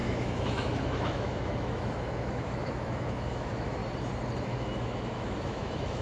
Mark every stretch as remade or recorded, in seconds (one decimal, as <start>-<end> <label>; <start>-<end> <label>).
0.0-3.8 remade; 3.8-4.4 recorded; 4.4-6.0 remade